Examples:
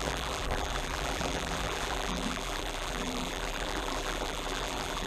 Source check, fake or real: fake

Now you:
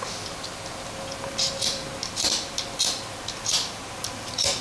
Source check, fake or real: real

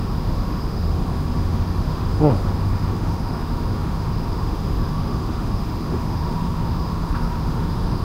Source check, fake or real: fake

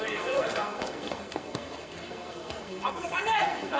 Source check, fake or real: fake